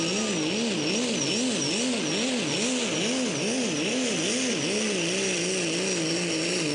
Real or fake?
real